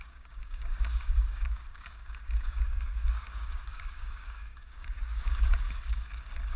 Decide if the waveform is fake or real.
fake